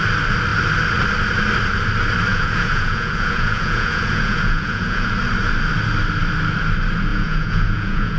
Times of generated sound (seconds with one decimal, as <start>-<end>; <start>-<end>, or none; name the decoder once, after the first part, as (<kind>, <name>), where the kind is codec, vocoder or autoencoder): 2.3-5.1 (vocoder, Vocos); 7.1-8.2